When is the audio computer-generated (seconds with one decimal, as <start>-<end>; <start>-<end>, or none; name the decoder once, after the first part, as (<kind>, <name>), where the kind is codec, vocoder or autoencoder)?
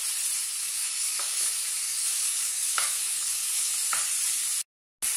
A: 0.6-3.7 (codec, DAC)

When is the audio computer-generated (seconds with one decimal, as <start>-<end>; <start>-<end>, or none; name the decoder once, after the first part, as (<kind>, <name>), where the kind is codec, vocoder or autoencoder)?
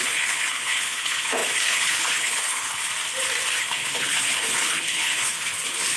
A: 0.0-2.8 (codec, HILCodec); 3.6-6.0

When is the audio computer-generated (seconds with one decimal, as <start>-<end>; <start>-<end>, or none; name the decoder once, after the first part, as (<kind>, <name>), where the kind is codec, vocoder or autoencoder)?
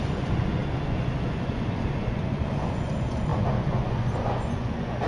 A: 0.0-5.1 (vocoder, Vocos)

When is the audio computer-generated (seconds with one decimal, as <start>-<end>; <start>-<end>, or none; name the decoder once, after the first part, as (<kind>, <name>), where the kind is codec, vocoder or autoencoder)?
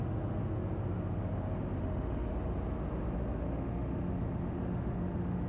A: 0.0-0.4 (autoencoder, DAC-VAE); 1.8-2.3; 3.4-5.5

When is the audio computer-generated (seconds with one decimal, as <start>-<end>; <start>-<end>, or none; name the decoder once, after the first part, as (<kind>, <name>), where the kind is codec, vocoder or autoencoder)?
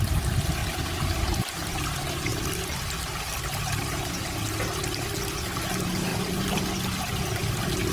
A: 6.1-6.6 (vocoder, BigVGAN v2)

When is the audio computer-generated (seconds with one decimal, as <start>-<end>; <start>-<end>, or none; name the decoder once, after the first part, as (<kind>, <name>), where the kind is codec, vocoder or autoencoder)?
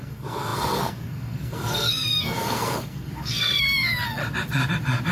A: 0.0-4.2 (codec, SNAC)